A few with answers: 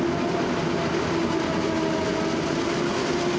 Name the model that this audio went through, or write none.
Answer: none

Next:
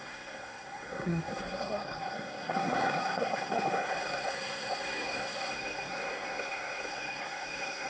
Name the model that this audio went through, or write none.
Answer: codec, SNAC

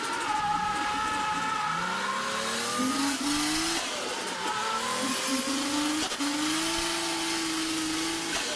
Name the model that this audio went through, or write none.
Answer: none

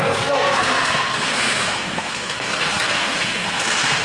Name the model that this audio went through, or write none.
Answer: codec, SNAC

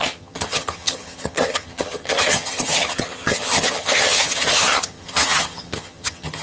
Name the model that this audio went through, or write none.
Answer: vocoder, HiFi-GAN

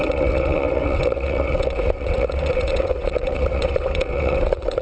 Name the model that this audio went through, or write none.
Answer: vocoder, WaveNeXt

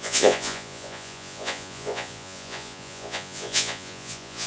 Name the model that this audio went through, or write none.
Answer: vocoder, Vocos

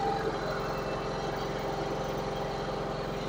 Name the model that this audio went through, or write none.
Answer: none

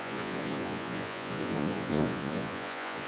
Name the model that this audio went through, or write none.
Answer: vocoder, Vocos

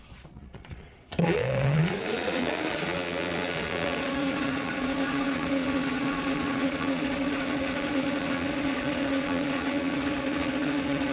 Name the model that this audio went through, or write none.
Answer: vocoder, Vocos